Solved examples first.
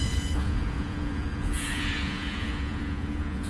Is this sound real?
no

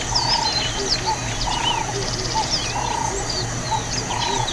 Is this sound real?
yes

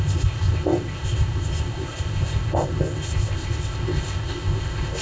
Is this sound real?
no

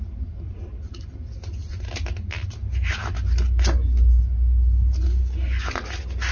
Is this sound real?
yes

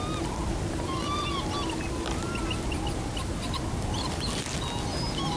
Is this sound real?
yes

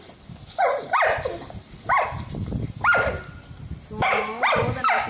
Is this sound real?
yes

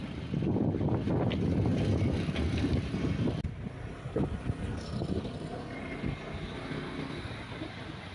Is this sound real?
yes